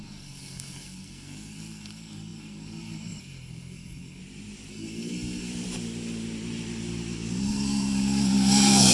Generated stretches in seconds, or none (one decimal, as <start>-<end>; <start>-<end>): 0.0-4.2; 4.7-5.5; 7.4-8.9